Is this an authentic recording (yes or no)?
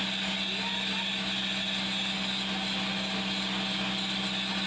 yes